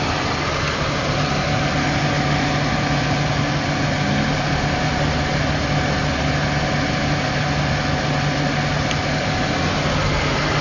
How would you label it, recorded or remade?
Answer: recorded